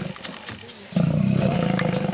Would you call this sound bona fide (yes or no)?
yes